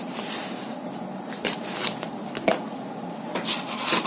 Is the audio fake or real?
fake